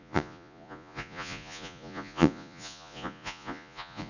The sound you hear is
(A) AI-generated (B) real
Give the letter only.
A